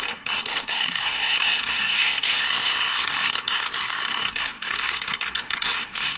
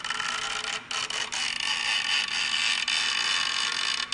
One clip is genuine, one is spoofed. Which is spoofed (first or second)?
first